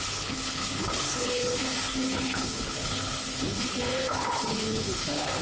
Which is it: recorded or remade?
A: remade